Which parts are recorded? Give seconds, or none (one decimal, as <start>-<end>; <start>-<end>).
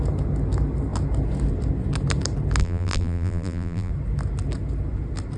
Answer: 0.0-2.6; 3.9-5.4